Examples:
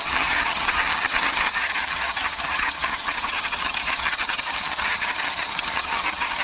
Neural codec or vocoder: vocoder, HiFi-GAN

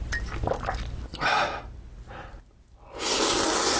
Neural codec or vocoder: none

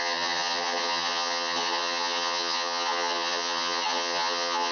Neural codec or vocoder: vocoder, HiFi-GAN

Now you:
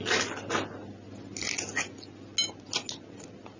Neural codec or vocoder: none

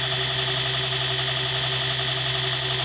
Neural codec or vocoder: none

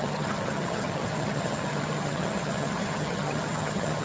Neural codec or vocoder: vocoder, HiFi-GAN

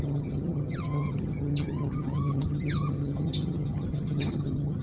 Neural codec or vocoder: vocoder, HiFi-GAN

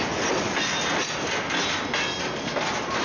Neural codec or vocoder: none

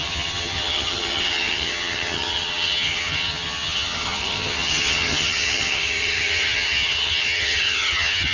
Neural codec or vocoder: vocoder, HiFi-GAN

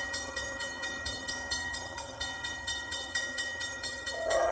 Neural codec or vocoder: vocoder, HiFi-GAN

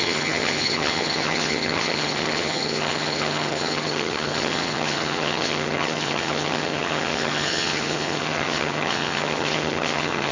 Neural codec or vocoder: vocoder, HiFi-GAN